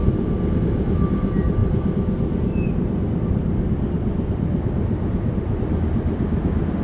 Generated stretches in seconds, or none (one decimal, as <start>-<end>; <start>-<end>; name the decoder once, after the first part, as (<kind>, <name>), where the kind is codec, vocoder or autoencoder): none